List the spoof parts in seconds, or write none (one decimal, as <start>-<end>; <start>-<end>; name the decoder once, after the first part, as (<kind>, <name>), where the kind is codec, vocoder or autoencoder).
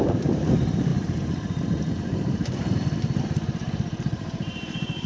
0.0-5.1 (vocoder, BigVGAN v2)